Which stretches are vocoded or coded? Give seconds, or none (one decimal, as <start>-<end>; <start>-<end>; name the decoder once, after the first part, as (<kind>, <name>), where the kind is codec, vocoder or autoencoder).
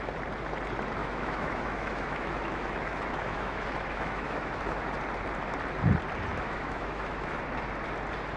1.0-4.8 (autoencoder, DAC-VAE); 6.3-7.4